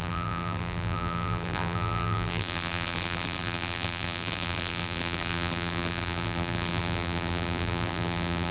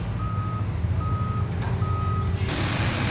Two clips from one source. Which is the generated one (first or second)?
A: first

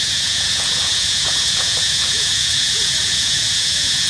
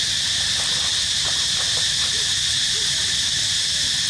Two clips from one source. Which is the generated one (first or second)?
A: first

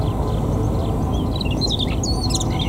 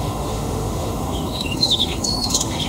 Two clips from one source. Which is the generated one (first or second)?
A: second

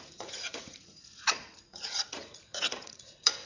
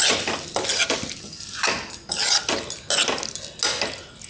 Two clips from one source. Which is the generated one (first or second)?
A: first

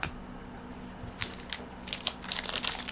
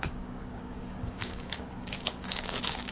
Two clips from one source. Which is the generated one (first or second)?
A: second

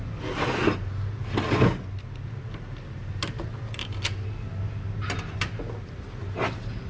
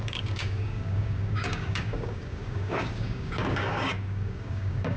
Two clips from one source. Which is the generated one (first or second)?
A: second